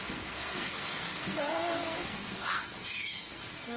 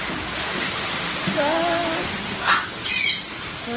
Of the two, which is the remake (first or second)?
first